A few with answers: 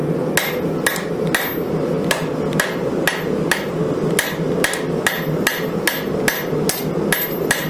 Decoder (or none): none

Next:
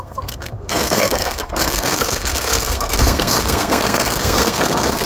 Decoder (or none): codec, SNAC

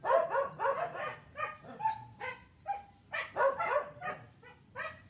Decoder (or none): none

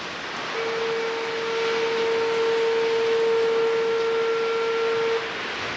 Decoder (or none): none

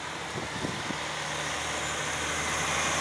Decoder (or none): none